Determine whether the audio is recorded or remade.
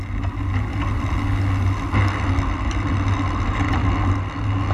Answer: recorded